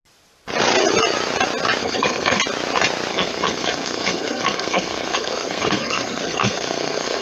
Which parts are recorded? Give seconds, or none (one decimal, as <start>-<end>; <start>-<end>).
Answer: 0.0-1.8; 2.4-3.1